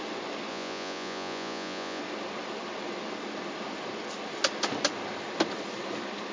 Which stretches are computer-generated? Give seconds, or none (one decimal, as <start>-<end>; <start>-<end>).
0.5-2.0